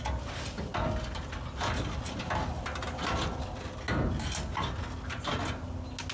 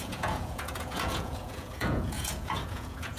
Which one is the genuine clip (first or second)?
first